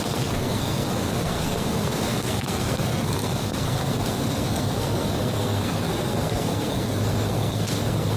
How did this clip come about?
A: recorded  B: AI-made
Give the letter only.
B